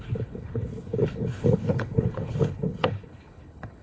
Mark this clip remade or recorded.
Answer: remade